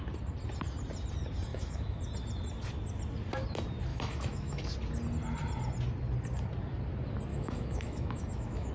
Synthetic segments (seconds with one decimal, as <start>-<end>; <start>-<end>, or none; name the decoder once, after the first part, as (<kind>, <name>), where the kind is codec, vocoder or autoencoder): 1.5-2.0 (autoencoder, DAC-VAE); 3.9-4.6; 7.3-8.7